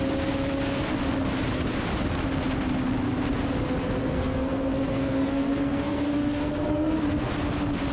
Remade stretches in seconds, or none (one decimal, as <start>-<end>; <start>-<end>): 4.0-7.3